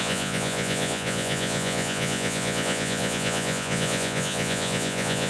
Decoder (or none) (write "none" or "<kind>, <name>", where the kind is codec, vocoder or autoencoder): vocoder, Vocos